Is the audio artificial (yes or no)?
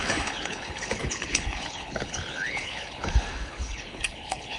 yes